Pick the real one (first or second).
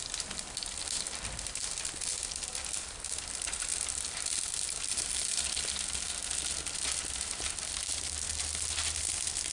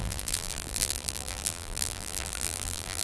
first